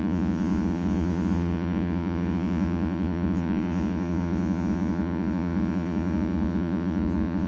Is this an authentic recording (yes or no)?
no